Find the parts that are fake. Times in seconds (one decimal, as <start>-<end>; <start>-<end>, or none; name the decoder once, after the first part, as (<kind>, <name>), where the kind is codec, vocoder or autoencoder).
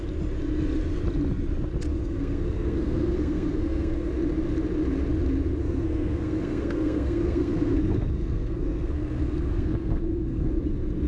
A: 1.9-4.1 (codec, SNAC); 5.6-10.6